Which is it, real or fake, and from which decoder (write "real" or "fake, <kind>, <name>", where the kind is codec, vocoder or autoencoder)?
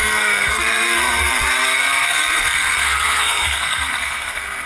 fake, codec, SNAC